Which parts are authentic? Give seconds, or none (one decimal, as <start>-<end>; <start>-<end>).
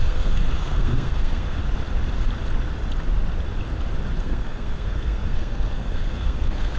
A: 1.6-4.2